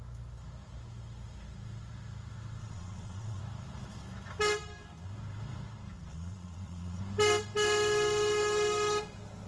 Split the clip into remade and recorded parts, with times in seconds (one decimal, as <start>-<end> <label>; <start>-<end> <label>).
0.0-2.6 recorded; 2.6-3.4 remade; 3.4-6.1 recorded; 6.1-7.0 remade; 7.0-9.5 recorded